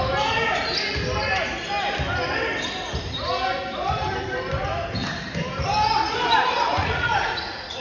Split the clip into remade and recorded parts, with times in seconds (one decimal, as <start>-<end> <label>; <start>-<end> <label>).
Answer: 0.0-6.7 recorded; 6.7-7.8 remade